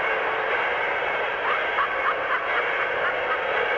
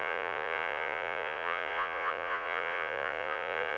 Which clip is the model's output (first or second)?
second